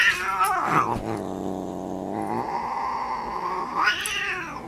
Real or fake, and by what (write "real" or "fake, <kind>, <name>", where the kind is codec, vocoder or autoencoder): real